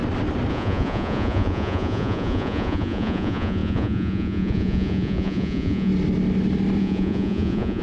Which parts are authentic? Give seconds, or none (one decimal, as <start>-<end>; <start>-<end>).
0.0-0.5; 5.9-6.8

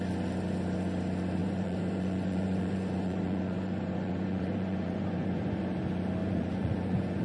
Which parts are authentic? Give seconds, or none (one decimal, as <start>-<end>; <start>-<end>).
0.0-1.4; 5.6-6.2